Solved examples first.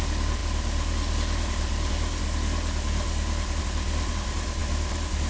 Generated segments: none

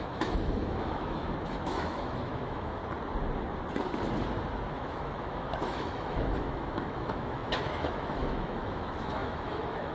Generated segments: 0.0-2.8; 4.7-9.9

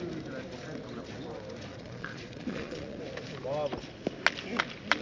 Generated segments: 1.7-3.0

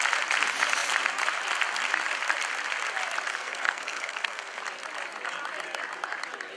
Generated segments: 3.3-4.6